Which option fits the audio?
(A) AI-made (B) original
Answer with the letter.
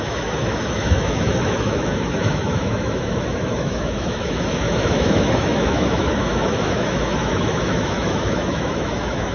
A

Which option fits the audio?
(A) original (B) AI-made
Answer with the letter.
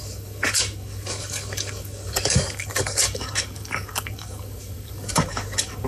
B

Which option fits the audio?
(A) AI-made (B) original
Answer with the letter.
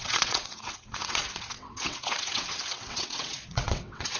A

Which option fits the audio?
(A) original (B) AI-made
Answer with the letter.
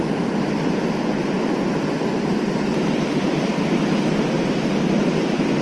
A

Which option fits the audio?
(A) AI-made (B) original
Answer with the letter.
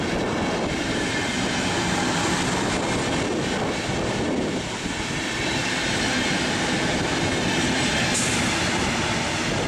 B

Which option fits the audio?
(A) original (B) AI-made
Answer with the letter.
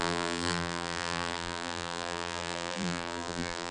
B